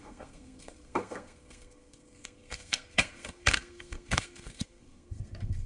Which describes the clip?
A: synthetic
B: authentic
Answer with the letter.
A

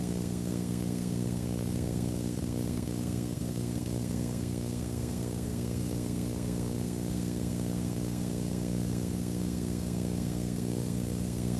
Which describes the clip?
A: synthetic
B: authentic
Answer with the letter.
A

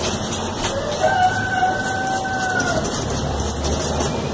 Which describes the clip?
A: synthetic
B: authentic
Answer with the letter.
B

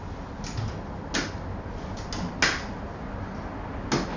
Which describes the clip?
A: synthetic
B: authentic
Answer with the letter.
B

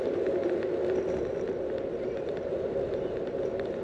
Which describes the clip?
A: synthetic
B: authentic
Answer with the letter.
B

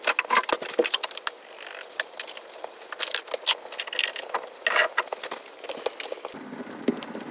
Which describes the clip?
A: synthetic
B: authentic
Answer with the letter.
B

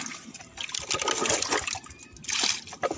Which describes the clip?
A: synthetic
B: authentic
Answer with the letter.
B